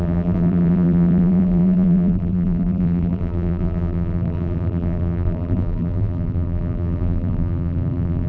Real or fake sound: fake